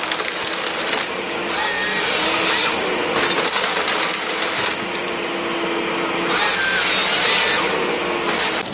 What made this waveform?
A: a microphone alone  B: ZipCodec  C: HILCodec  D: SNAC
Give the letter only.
A